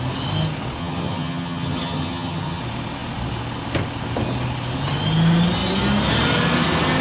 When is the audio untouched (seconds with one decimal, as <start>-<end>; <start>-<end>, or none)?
0.0-0.8; 2.6-7.0